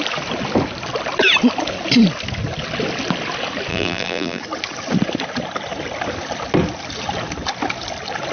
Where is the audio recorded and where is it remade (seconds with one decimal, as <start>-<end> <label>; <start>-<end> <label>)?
0.0-3.7 recorded; 3.7-4.4 remade; 4.4-8.3 recorded